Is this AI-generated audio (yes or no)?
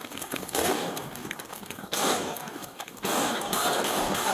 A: yes